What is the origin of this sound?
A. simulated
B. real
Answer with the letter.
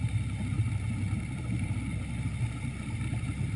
B